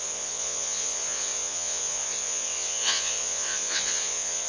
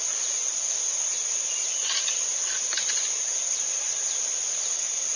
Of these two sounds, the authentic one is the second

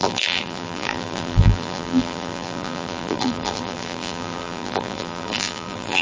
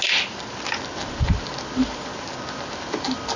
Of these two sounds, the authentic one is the second